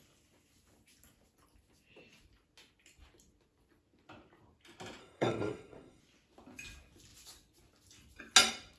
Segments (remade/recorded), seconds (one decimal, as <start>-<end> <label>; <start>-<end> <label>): 0.0-5.0 recorded; 5.0-6.0 remade; 6.0-8.8 recorded